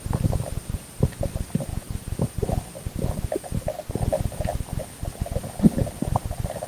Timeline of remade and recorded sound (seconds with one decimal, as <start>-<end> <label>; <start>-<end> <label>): 0.0-6.7 recorded

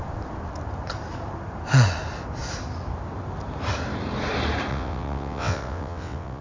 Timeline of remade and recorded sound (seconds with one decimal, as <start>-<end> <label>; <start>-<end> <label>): 0.0-4.7 recorded; 4.7-6.4 remade

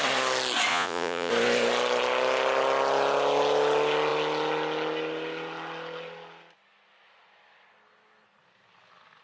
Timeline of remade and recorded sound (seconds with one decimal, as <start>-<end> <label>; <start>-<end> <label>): 0.0-0.7 recorded; 0.7-1.3 remade; 1.3-9.2 recorded

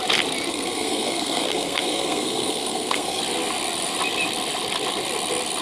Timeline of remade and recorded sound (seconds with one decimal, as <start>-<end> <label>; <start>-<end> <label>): 0.0-0.5 recorded; 0.5-3.2 remade; 3.2-5.6 recorded

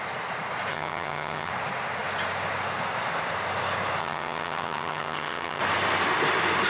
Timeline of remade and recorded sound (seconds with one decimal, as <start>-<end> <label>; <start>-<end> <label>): 0.0-0.7 recorded; 0.7-1.5 remade; 1.5-4.0 recorded; 4.0-5.6 remade; 5.6-6.7 recorded